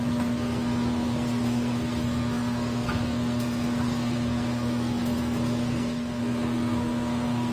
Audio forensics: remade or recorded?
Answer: remade